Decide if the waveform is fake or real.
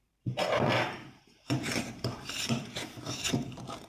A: fake